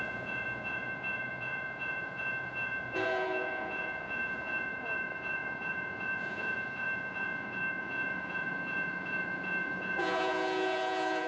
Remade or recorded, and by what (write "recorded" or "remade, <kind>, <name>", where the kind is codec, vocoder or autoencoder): remade, vocoder, Vocos